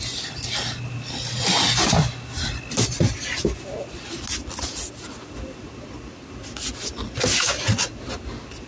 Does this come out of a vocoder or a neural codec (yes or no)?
no